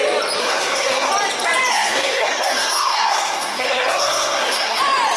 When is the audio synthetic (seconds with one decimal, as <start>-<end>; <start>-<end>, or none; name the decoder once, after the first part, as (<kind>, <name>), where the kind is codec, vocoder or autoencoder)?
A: 0.4-1.1 (codec, SNAC); 1.7-4.8